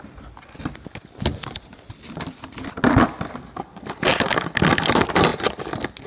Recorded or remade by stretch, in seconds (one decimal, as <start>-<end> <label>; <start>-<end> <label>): 0.0-6.1 recorded

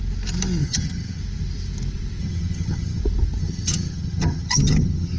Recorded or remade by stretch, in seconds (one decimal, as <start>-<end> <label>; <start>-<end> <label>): 0.0-0.6 recorded; 0.6-1.2 remade; 1.2-2.2 recorded; 2.2-3.0 remade; 3.0-3.4 recorded; 3.4-5.2 remade

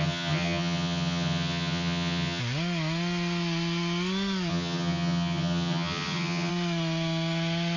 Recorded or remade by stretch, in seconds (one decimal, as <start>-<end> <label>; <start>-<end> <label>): 0.0-2.4 remade; 2.4-4.5 recorded; 4.5-6.5 remade; 6.5-7.8 recorded

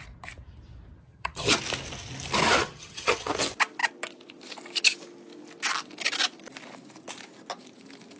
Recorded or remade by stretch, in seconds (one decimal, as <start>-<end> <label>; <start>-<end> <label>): 0.0-1.0 recorded; 1.0-1.5 remade; 1.5-2.6 recorded; 2.6-3.3 remade; 3.3-8.2 recorded

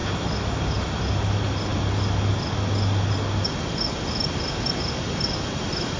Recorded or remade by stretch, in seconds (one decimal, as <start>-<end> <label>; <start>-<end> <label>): 0.0-6.0 recorded

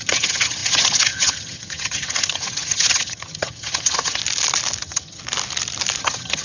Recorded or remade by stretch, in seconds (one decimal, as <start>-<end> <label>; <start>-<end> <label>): 0.0-4.2 remade; 4.2-4.8 recorded; 4.8-5.2 remade; 5.2-6.0 recorded; 6.0-6.4 remade

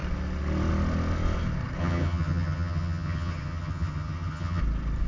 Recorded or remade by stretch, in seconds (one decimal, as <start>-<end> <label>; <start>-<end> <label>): 0.0-1.8 recorded; 1.8-4.6 remade; 4.6-5.1 recorded

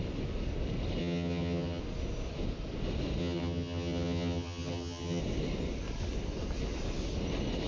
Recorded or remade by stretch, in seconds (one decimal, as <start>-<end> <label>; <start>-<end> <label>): 0.0-1.0 recorded; 1.0-1.8 remade; 1.8-3.2 recorded; 3.2-5.2 remade; 5.2-7.7 recorded